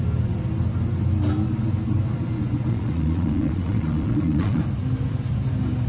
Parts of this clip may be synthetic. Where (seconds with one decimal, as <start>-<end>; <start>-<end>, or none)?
2.7-4.6